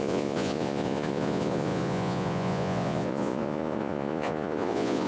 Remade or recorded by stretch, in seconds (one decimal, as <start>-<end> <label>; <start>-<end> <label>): 0.0-5.1 remade